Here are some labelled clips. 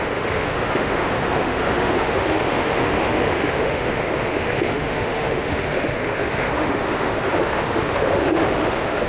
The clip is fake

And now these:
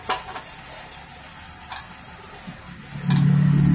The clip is real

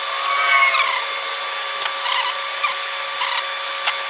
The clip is real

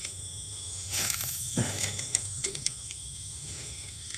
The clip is fake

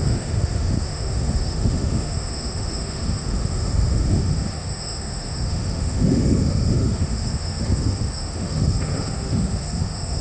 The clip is fake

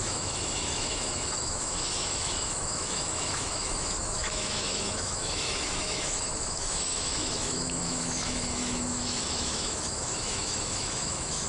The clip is fake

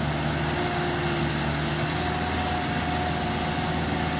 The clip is real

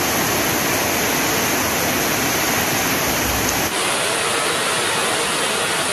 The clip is real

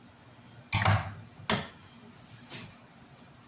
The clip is real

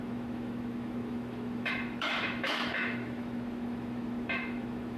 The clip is fake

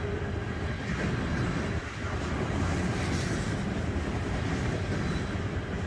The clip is real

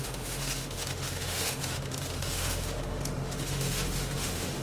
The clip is fake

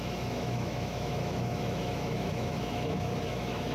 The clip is fake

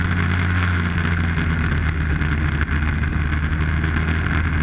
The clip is real